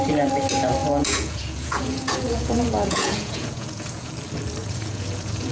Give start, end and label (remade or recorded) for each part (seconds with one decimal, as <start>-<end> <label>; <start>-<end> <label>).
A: 0.0-0.8 recorded; 0.8-4.1 remade; 4.1-4.6 recorded; 4.6-5.5 remade